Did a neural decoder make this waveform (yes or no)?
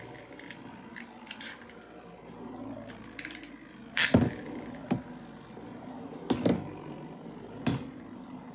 no